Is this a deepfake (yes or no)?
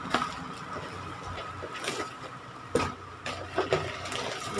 no